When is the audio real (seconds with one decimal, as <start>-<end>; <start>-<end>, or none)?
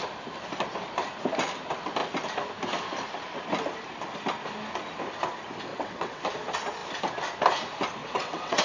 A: 0.0-5.7; 6.2-8.0